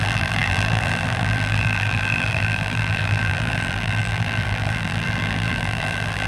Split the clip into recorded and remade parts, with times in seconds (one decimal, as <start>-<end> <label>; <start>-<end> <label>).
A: 0.0-6.3 remade